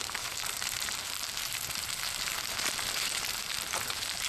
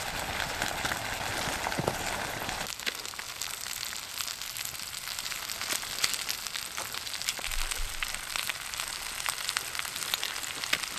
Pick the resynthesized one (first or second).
first